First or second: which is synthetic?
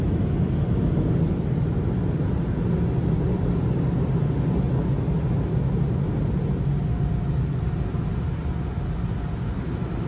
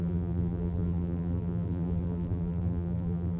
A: second